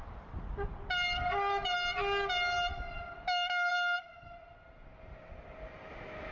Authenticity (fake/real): real